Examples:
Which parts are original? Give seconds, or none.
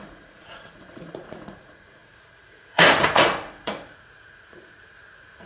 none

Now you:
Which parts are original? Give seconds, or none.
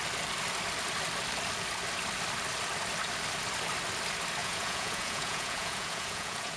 0.0-4.4